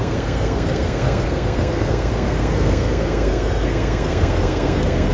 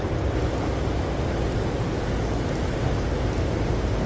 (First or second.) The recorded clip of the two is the second